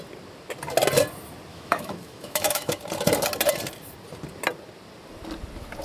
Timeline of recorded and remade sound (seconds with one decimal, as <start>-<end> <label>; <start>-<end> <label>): 0.0-1.5 recorded; 1.5-2.8 remade; 2.8-5.8 recorded